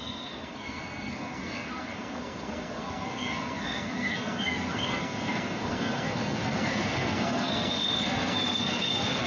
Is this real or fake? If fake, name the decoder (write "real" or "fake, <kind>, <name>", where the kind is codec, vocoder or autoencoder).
fake, codec, SNAC